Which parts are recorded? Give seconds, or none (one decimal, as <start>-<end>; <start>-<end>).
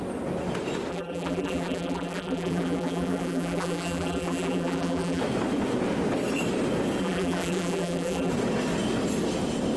0.0-0.9; 5.2-7.0; 8.3-9.8